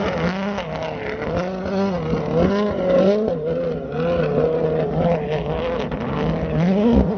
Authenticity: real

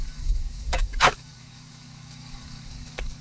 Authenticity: fake